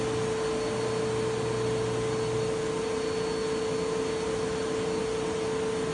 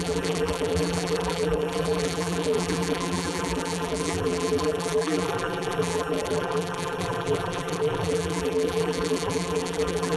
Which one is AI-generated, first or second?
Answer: second